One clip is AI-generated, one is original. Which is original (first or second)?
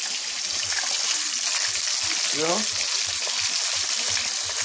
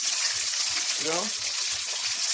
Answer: first